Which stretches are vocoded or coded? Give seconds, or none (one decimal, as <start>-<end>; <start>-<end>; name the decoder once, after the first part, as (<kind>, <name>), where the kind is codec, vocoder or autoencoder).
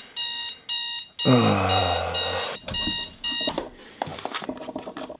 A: none